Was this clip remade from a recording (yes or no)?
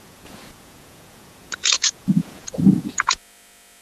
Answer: yes